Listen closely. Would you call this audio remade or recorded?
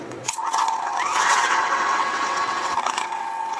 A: remade